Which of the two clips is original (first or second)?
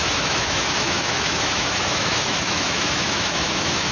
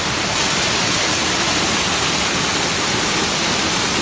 second